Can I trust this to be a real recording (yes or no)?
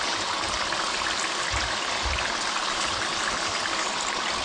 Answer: yes